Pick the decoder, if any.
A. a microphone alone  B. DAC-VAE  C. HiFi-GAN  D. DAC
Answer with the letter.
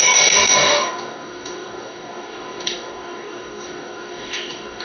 D